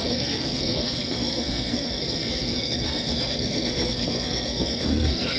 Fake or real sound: fake